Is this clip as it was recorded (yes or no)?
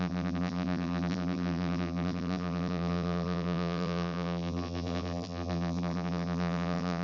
no